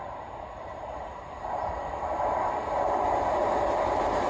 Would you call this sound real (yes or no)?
yes